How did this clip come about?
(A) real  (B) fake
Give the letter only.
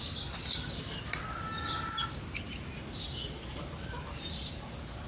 A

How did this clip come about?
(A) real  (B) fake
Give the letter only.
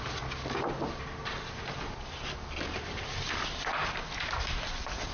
A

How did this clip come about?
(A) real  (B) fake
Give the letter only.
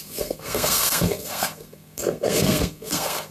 B